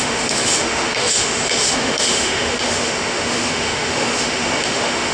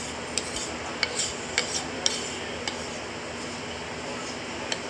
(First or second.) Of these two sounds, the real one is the second